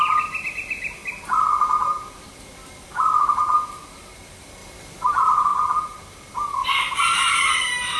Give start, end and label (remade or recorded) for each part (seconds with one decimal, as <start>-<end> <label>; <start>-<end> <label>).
0.0-1.0 remade; 1.0-2.1 recorded; 2.1-4.6 remade; 4.6-5.1 recorded; 5.1-6.6 remade; 6.6-7.5 recorded; 7.5-8.0 remade